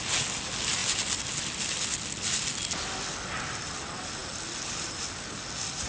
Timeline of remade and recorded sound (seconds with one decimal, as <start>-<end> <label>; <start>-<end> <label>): 0.0-5.9 recorded